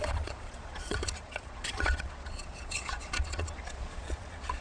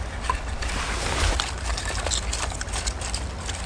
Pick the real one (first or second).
second